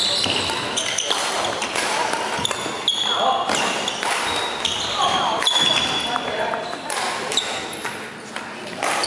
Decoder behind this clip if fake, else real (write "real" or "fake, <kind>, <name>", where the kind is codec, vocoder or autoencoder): real